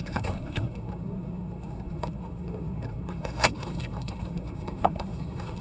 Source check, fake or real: fake